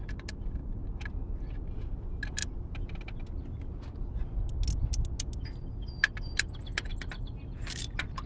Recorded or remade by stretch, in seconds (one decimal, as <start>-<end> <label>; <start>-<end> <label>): 0.0-8.3 recorded